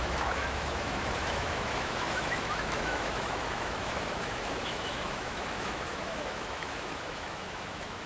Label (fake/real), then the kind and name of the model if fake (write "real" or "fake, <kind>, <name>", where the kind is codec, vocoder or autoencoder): fake, autoencoder, DAC-VAE